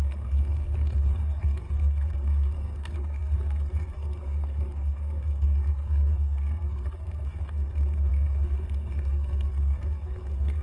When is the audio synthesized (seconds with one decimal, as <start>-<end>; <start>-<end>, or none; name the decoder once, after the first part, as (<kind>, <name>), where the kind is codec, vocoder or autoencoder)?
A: 0.0-10.6 (codec, SNAC)